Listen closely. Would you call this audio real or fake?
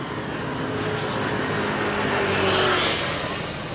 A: real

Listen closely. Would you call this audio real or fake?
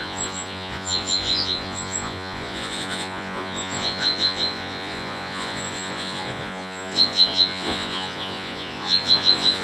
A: fake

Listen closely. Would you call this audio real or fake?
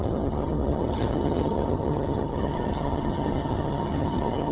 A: fake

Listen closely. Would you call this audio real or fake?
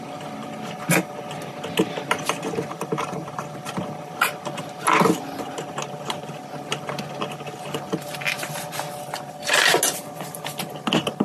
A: real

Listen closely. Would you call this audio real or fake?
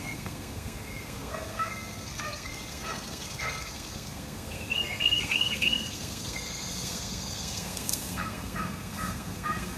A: fake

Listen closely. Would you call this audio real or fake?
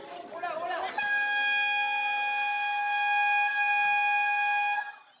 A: real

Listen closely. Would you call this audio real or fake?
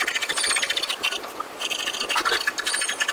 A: real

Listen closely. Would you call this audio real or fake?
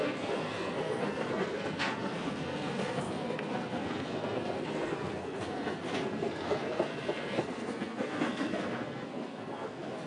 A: fake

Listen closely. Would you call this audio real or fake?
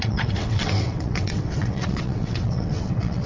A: fake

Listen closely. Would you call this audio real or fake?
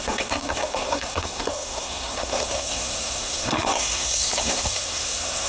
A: fake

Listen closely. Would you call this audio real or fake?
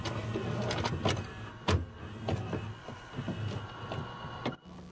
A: real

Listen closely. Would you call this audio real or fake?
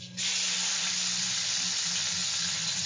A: real